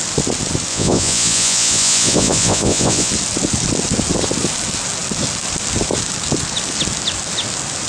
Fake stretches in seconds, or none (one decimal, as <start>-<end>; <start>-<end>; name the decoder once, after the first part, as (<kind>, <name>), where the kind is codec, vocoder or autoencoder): 0.7-3.1 (vocoder, Vocos)